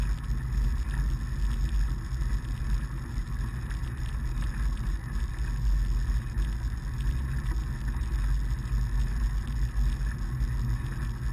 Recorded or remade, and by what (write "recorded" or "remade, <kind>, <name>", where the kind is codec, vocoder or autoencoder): recorded